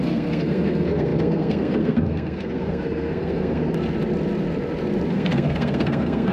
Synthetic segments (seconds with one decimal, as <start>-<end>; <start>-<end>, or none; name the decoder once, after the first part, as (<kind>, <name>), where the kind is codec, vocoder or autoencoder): 0.0-3.6 (codec, SNAC); 5.1-6.3